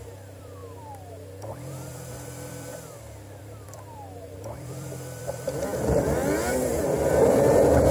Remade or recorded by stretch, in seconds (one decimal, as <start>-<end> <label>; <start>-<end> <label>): 0.0-2.7 remade; 2.7-3.4 recorded; 3.4-7.9 remade